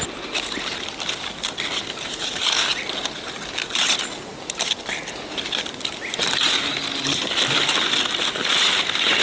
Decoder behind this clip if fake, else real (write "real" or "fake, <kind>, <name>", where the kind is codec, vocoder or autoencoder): real